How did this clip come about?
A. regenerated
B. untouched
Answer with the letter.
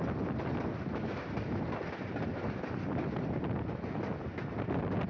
B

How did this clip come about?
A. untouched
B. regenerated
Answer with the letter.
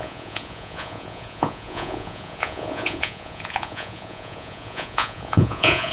B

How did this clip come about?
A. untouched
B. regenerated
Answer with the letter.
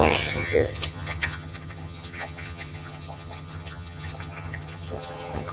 B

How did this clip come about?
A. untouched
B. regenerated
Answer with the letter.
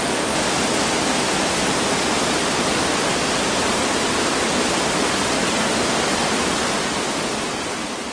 A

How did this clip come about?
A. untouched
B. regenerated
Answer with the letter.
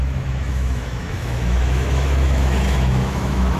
B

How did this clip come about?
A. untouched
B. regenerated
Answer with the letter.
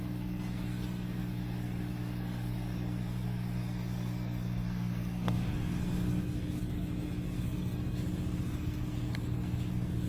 B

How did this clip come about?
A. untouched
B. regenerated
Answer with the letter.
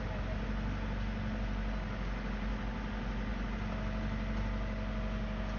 A